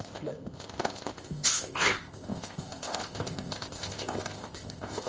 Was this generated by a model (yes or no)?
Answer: yes